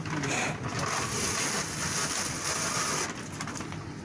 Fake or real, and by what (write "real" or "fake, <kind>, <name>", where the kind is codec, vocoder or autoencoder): real